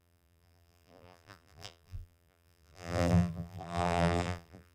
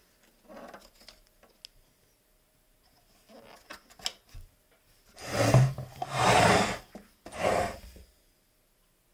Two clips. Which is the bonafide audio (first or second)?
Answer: second